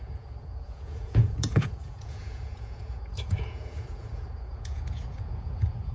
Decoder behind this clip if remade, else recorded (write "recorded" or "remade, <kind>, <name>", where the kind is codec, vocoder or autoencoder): remade, vocoder, Vocos